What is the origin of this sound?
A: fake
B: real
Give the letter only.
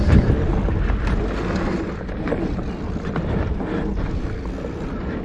B